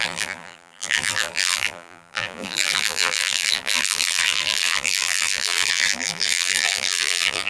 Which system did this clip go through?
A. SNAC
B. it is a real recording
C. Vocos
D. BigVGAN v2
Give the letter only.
D